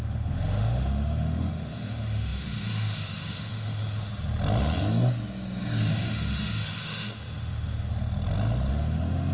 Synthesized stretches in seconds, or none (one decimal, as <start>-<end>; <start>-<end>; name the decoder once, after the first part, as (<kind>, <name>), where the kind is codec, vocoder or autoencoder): 0.0-4.1 (autoencoder, DAC-VAE); 5.9-7.9; 8.7-9.3